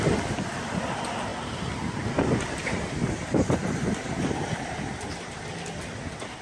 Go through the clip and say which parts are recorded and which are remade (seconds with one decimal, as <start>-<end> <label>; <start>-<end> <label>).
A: 0.0-3.0 recorded; 3.0-5.5 remade; 5.5-6.4 recorded